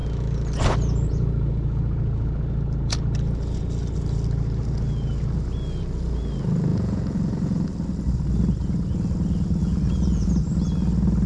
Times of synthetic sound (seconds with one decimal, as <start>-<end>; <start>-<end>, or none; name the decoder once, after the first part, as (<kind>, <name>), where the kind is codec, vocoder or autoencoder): 6.7-7.7 (vocoder, Vocos); 9.6-10.3